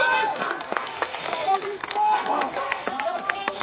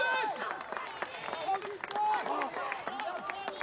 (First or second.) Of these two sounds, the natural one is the second